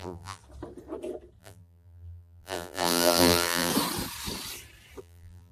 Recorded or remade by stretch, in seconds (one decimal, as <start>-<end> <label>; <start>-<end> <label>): 0.0-0.4 remade; 0.4-1.4 recorded; 1.4-3.7 remade; 3.7-5.0 recorded; 5.0-5.5 remade